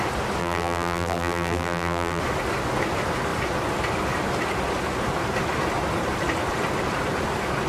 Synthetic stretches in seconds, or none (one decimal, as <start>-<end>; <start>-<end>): 0.4-2.2